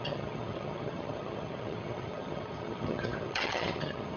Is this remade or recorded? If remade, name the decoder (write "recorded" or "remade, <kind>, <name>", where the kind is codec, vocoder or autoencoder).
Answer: remade, vocoder, HiFi-GAN